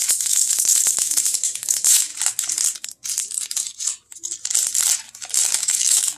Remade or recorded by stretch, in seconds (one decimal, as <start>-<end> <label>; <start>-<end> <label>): 0.0-2.1 remade; 2.1-5.5 recorded; 5.5-6.2 remade